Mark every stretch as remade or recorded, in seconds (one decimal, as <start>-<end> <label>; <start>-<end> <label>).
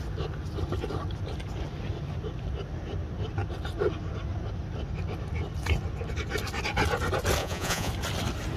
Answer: 0.0-7.4 recorded; 7.4-7.9 remade; 7.9-8.6 recorded